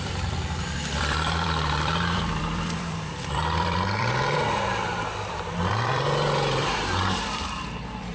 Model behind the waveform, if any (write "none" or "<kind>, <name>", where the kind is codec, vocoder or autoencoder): vocoder, BigVGAN v2